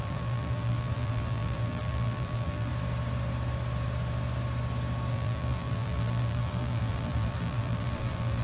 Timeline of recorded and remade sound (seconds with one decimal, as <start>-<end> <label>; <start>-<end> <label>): 0.0-2.7 remade; 2.7-5.1 recorded; 5.1-8.4 remade